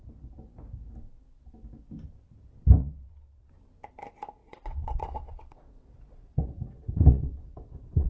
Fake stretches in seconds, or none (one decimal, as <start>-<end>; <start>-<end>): 2.8-3.5; 4.4-8.1